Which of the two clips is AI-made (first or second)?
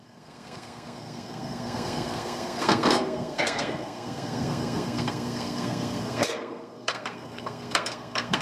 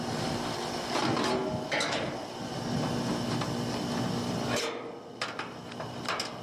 first